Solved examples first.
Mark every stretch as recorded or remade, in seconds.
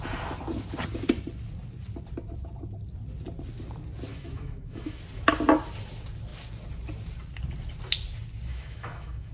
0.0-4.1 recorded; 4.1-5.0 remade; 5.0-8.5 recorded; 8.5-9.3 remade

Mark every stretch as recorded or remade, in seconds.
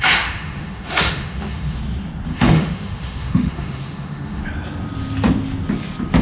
0.0-1.8 remade; 1.8-2.3 recorded; 2.3-4.4 remade; 4.4-6.2 recorded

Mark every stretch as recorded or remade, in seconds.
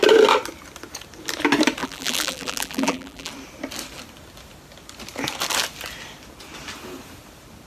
0.0-1.8 recorded; 1.8-3.3 remade; 3.3-7.7 recorded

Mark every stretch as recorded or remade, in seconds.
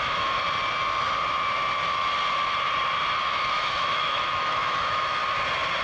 0.0-0.4 remade; 0.4-3.5 recorded; 3.5-5.2 remade; 5.2-5.8 recorded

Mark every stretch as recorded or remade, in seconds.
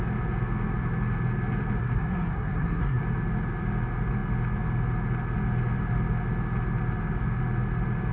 0.0-1.8 recorded; 1.8-3.0 remade; 3.0-8.1 recorded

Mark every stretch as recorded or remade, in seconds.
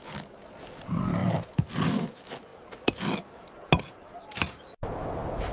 0.0-5.5 recorded